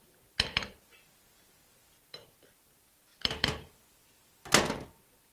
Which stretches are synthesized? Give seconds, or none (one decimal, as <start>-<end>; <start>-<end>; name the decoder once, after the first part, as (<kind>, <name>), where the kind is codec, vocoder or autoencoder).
none